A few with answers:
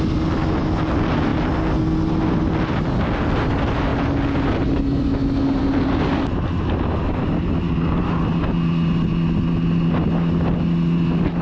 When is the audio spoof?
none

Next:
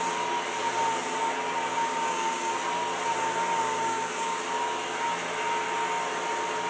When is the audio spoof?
1.7-2.6; 3.7-4.4

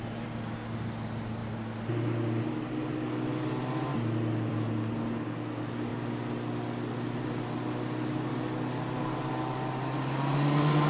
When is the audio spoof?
none